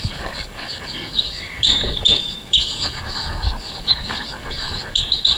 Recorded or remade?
remade